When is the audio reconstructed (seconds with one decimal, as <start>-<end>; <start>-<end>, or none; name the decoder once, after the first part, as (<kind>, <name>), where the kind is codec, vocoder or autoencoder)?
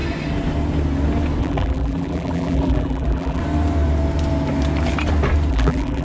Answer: 1.4-3.4 (vocoder, BigVGAN v2); 5.5-6.0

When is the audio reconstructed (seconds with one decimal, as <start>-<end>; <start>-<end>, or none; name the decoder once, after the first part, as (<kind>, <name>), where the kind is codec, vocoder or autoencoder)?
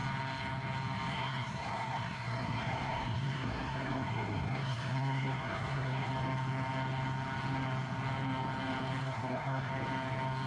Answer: 1.1-6.1 (codec, SNAC); 9.0-9.7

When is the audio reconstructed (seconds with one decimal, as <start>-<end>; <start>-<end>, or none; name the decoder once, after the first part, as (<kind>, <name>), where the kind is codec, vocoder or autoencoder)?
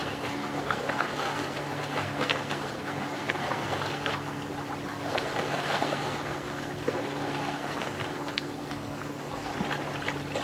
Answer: 0.0-4.5 (codec, SNAC); 4.9-9.5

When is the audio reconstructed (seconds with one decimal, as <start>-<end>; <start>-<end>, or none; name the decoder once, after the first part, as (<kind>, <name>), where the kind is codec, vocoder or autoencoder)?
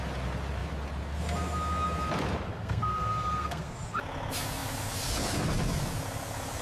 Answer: 2.5-3.7 (codec, SNAC)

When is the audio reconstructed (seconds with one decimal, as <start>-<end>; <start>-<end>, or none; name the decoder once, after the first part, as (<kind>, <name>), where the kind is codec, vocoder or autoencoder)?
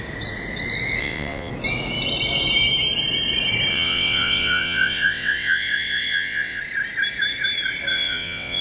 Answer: 1.0-1.5 (vocoder, WaveNeXt); 3.7-6.6; 7.9-8.6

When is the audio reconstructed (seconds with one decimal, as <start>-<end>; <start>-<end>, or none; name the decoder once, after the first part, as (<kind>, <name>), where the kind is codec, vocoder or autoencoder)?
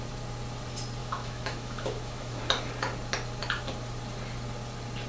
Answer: 1.0-2.4 (autoencoder, DAC-VAE)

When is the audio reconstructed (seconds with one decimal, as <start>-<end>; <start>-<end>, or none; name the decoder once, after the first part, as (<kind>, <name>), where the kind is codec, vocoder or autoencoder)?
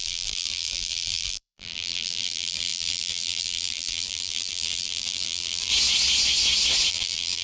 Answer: 0.0-5.7 (vocoder, BigVGAN v2); 6.9-7.4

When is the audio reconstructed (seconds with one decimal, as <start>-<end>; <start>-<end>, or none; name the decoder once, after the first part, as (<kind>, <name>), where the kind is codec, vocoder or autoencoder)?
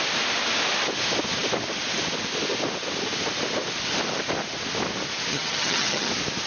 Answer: 5.3-6.1 (vocoder, HiFi-GAN)